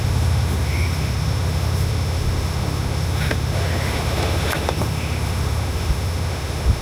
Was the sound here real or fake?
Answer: fake